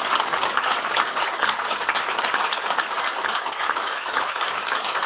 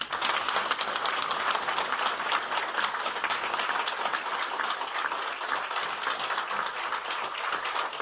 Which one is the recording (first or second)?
second